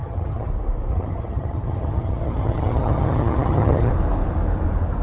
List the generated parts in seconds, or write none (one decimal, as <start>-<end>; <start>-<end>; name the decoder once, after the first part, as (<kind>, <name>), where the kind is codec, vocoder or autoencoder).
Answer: 0.0-0.5 (vocoder, HiFi-GAN); 0.9-3.9